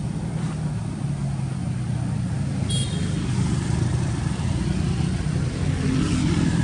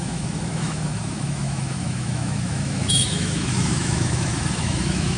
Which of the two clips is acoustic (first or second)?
first